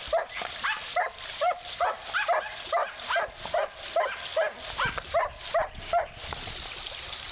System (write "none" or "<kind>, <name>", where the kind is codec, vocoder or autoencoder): vocoder, BigVGAN v2